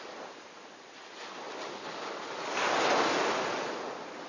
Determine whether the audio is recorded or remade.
recorded